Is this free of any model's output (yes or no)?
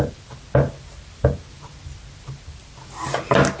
yes